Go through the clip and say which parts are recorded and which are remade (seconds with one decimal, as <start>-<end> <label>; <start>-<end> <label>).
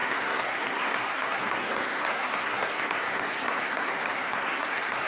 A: 0.0-5.1 remade